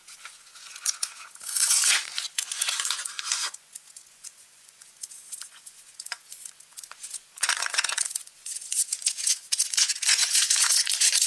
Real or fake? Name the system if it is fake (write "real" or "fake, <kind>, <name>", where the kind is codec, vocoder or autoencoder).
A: fake, vocoder, Vocos